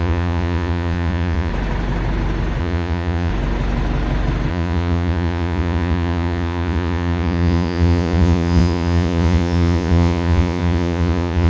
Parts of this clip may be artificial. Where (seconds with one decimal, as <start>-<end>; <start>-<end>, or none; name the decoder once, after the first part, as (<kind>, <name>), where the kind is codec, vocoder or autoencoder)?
0.0-1.5 (vocoder, Vocos); 2.6-3.3; 4.5-11.5